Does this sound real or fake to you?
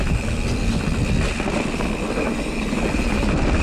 real